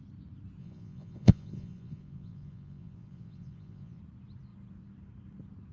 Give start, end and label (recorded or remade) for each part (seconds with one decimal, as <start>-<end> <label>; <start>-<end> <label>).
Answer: 0.0-0.6 recorded; 0.6-4.0 remade; 4.0-5.7 recorded